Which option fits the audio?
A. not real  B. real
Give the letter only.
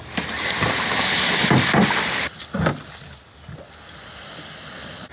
B